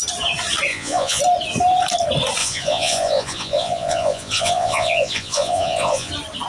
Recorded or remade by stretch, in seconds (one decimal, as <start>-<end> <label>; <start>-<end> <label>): 0.0-0.7 recorded; 0.7-1.2 remade; 1.2-2.4 recorded; 2.4-6.1 remade; 6.1-6.5 recorded